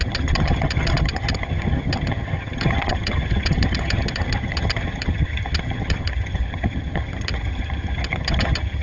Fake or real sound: fake